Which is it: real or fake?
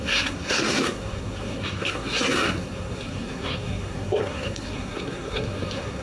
fake